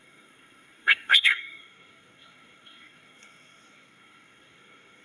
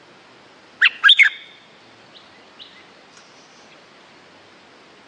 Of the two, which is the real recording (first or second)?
second